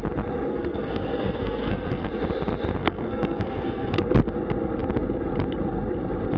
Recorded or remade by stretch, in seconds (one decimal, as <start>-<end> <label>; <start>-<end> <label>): 0.0-0.5 recorded; 0.5-2.1 remade; 2.1-2.8 recorded; 2.8-4.0 remade; 4.0-6.4 recorded